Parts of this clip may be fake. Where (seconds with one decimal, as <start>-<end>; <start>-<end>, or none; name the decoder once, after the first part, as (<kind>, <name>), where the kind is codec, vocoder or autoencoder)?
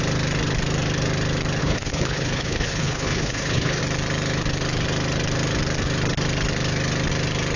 1.6-3.8 (codec, HILCodec)